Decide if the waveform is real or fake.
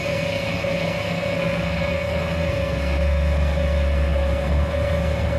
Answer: fake